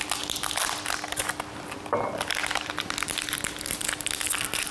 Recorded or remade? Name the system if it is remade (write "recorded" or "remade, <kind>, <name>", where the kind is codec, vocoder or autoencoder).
recorded